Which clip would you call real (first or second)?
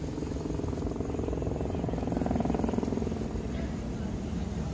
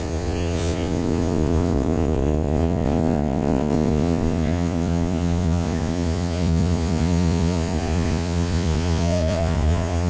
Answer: first